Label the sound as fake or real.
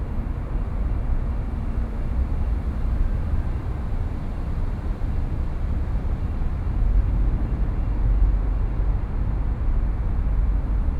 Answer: real